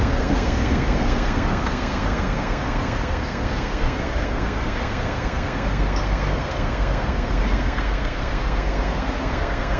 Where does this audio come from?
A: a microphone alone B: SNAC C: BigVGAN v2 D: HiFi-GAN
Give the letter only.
B